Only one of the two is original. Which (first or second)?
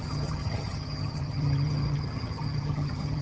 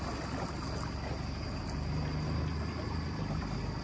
second